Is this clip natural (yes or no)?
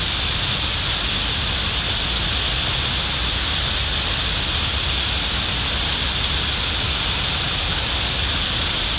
yes